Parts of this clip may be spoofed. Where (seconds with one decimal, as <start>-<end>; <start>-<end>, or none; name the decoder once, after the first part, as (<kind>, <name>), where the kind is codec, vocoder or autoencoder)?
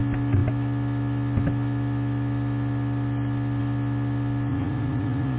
4.5-5.4 (vocoder, Vocos)